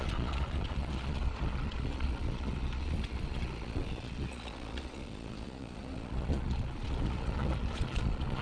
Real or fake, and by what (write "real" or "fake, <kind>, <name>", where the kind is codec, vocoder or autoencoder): fake, vocoder, Vocos